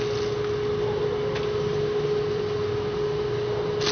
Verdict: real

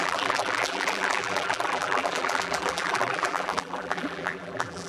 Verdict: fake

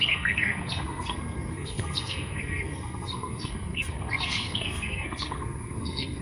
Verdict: fake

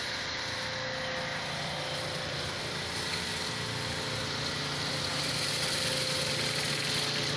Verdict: real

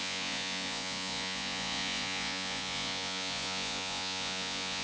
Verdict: fake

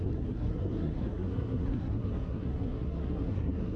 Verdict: fake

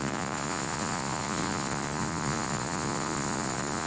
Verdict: fake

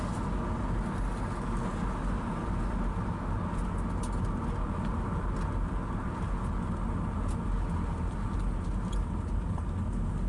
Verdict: real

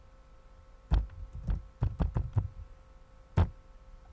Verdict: real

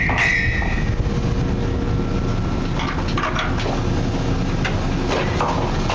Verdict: real